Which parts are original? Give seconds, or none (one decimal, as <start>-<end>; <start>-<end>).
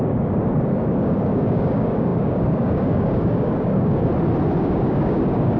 4.1-4.6